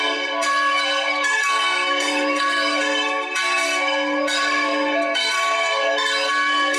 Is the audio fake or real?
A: fake